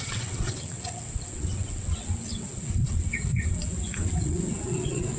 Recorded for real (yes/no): no